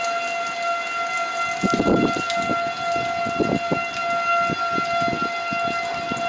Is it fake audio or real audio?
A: real